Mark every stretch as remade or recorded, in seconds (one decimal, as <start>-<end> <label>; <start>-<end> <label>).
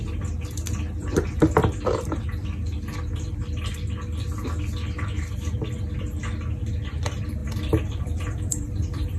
0.0-7.4 recorded; 7.4-9.2 remade